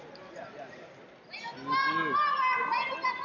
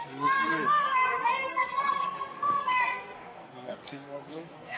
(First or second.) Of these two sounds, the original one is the first